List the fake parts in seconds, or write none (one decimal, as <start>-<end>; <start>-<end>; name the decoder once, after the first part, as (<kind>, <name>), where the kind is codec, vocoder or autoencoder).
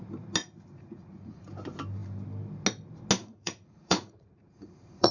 0.4-1.5 (vocoder, Vocos); 3.2-5.1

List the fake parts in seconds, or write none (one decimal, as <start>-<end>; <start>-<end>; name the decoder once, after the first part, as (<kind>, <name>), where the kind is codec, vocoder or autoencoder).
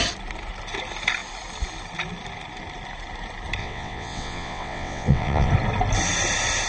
3.6-5.5 (vocoder, WaveNeXt)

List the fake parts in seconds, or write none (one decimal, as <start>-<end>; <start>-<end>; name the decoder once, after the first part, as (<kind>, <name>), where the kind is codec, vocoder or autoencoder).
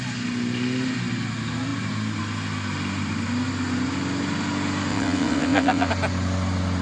4.9-5.9 (vocoder, WaveNeXt)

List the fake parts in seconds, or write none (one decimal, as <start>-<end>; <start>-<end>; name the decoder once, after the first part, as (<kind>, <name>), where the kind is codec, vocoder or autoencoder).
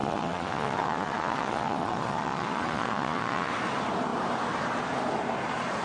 0.0-3.5 (vocoder, Vocos)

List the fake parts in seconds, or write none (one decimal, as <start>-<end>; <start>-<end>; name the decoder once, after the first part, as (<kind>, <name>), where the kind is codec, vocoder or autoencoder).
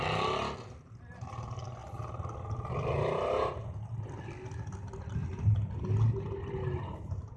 5.2-5.8 (vocoder, BigVGAN v2)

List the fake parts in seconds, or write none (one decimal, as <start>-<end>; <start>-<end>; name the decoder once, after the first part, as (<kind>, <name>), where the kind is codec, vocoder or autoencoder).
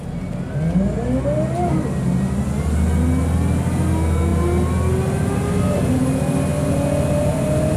none